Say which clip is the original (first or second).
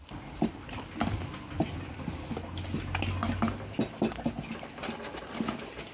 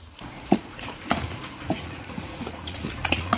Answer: first